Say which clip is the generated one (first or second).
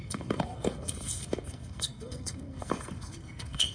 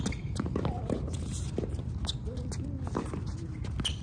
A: first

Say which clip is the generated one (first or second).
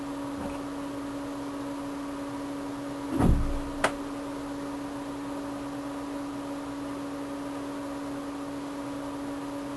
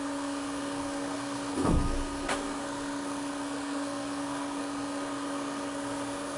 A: second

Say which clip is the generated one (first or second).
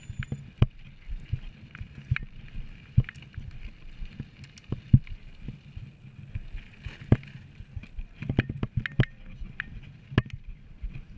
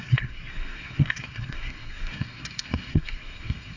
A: second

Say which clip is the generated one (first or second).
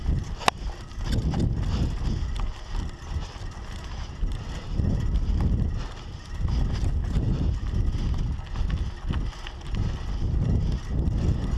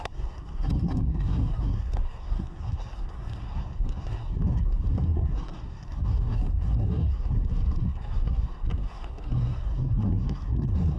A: second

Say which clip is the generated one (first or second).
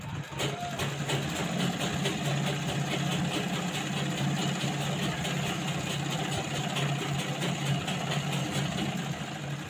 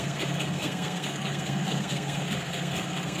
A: second